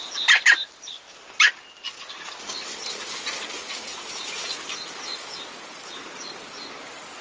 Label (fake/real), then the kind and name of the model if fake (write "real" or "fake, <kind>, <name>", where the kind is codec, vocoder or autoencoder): real